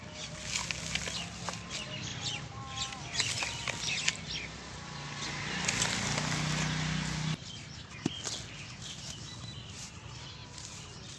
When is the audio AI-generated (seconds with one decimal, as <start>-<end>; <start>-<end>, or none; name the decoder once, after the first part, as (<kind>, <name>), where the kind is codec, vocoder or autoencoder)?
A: none